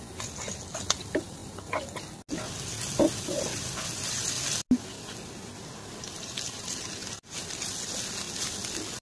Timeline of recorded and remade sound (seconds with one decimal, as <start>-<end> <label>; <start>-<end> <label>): 0.0-9.0 recorded